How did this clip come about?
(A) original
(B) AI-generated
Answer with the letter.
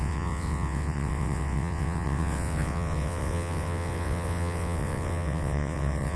B